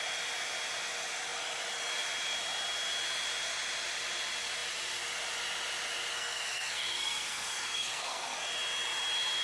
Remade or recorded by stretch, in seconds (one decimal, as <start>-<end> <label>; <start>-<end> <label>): 0.0-6.1 recorded; 6.1-8.4 remade; 8.4-9.4 recorded